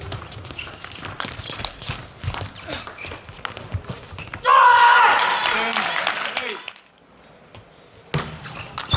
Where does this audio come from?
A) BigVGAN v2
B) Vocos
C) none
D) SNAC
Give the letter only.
C